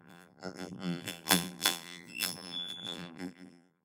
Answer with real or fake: fake